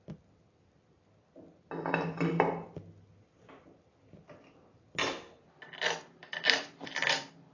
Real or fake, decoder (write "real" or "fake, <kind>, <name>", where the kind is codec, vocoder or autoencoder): real